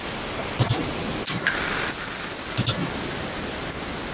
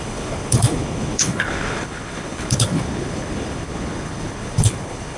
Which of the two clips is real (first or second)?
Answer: first